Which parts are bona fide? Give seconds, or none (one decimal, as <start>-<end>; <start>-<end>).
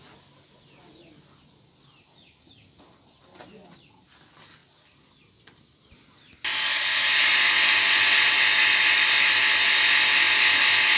0.0-11.0